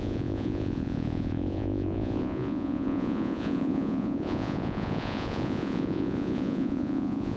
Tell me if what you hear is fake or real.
fake